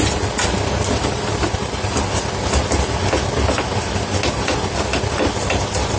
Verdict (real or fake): real